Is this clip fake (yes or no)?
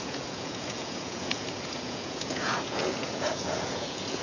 yes